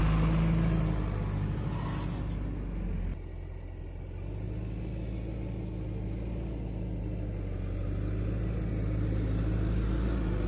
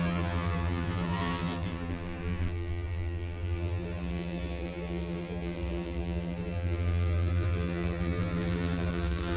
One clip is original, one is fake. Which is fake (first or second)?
second